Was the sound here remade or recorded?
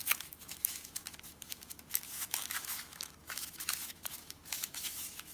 remade